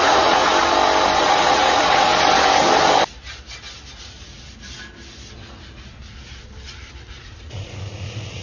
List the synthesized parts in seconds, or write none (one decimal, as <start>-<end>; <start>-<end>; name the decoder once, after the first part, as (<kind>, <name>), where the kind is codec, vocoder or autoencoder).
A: 0.0-0.5 (vocoder, Vocos); 1.2-2.1; 7.1-8.4